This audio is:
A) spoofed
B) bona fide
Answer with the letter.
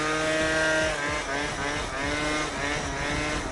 B